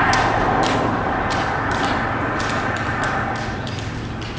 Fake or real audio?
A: real